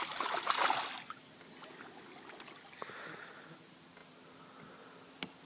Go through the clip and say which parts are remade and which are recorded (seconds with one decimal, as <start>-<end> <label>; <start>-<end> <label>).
0.0-5.4 recorded